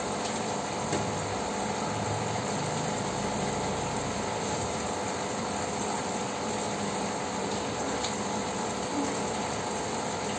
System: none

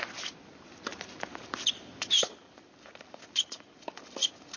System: none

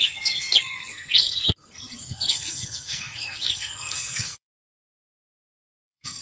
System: codec, SNAC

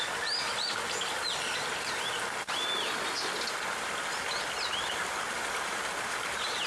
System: none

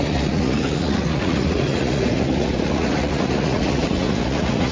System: vocoder, Vocos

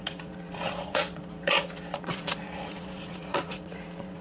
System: vocoder, Vocos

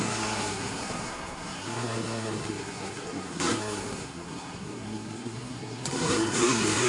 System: codec, SNAC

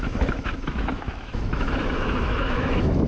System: autoencoder, DAC-VAE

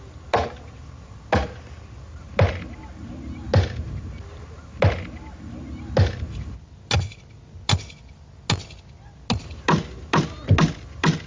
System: none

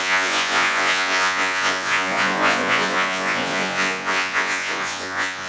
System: vocoder, Vocos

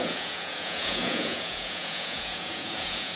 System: vocoder, Vocos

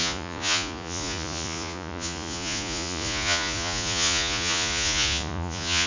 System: vocoder, Vocos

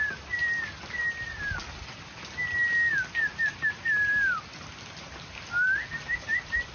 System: none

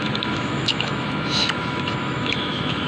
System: autoencoder, DAC-VAE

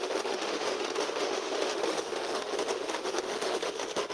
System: autoencoder, DAC-VAE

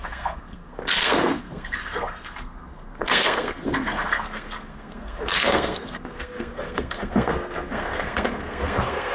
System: codec, SNAC